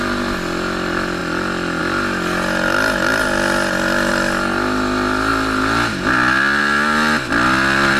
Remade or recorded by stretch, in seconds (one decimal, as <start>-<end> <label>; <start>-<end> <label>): 0.0-8.0 recorded